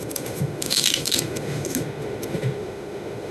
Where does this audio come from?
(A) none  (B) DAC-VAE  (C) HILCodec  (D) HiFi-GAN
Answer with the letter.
B